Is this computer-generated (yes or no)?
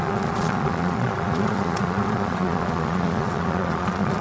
yes